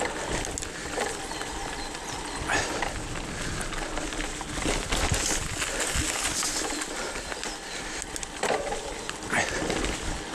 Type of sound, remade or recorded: recorded